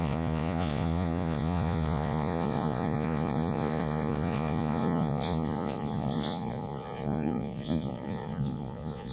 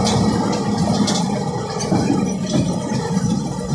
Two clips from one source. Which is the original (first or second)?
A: second